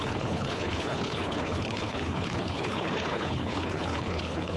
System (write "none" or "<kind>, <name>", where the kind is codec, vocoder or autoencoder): codec, HILCodec